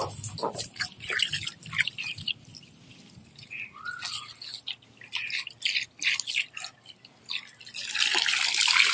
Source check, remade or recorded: recorded